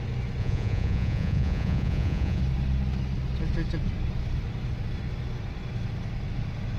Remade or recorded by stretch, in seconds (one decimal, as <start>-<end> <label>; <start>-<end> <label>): 0.0-0.4 recorded; 0.4-2.4 remade; 2.4-6.8 recorded